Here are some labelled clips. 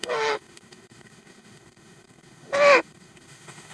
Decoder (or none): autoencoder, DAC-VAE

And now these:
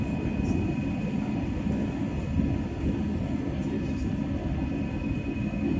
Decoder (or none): none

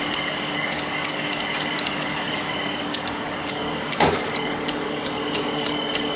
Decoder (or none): codec, DAC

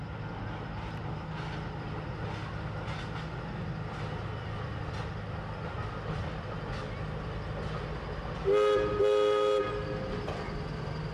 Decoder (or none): none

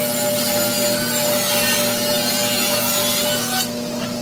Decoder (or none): none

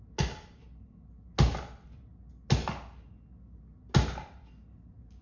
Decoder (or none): none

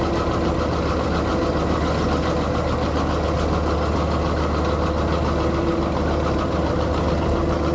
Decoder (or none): none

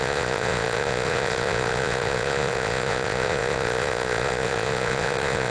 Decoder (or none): vocoder, Vocos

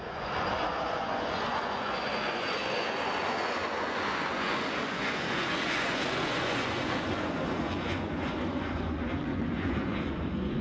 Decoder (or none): vocoder, Vocos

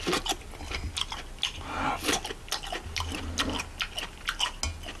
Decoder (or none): none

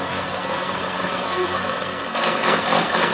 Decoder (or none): codec, SNAC